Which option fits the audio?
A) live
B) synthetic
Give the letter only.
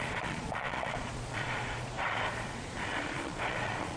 B